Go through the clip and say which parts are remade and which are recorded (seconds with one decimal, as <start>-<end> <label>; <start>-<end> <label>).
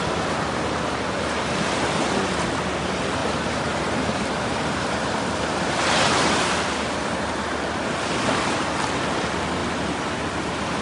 0.0-3.2 recorded; 3.2-6.3 remade; 6.3-10.8 recorded